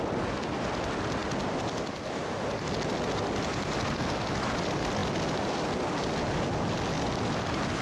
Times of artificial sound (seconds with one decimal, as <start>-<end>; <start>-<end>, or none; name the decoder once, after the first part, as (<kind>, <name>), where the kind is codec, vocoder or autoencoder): none